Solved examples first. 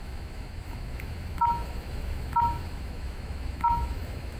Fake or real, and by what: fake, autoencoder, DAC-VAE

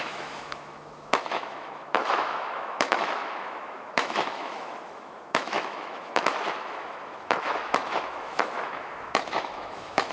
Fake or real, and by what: fake, autoencoder, DAC-VAE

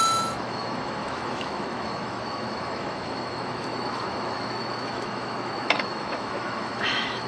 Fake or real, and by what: fake, autoencoder, DAC-VAE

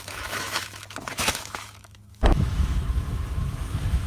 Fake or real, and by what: fake, autoencoder, DAC-VAE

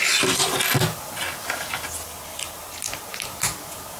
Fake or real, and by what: real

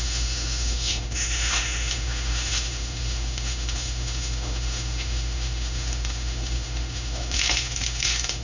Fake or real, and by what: fake, autoencoder, DAC-VAE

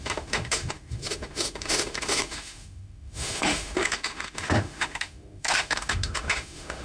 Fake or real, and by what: fake, autoencoder, DAC-VAE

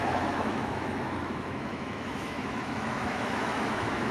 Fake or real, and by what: fake, autoencoder, DAC-VAE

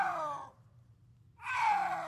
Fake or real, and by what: real